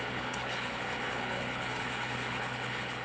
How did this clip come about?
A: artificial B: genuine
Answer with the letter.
A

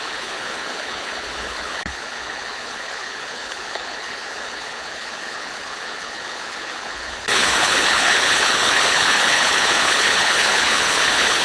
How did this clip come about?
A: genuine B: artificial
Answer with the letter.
B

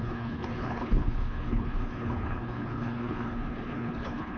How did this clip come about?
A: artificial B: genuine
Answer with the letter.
A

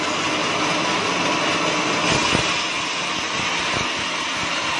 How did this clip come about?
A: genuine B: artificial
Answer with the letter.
A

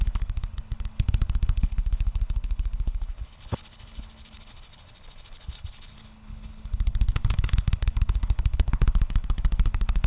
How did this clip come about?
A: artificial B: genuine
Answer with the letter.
A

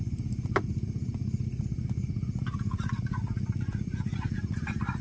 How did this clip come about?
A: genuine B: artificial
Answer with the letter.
A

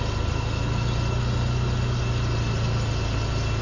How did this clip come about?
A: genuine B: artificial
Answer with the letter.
A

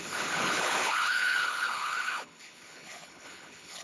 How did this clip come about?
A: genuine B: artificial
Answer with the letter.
B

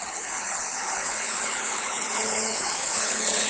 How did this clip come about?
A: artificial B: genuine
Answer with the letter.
A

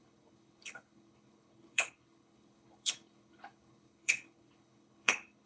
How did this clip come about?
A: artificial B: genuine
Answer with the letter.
A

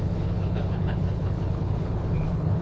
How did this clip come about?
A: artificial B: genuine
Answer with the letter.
A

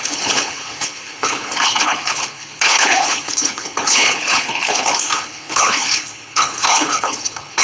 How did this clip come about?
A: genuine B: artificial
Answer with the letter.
B